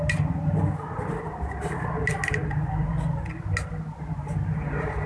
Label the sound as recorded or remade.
recorded